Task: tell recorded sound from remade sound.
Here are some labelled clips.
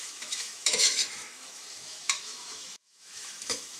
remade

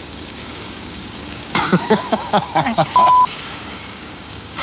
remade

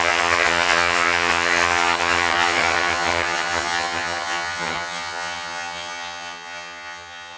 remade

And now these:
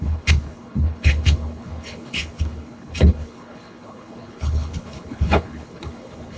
remade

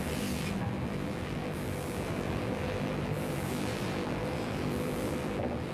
remade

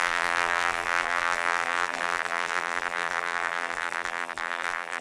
remade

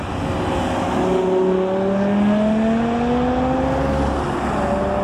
recorded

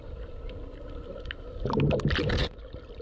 recorded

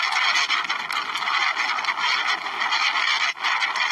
recorded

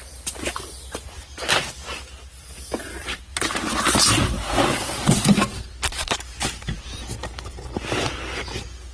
recorded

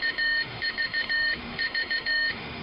remade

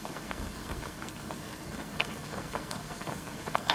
remade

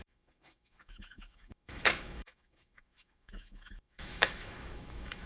remade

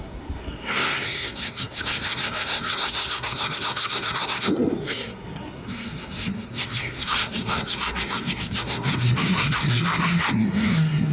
remade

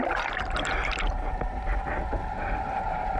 recorded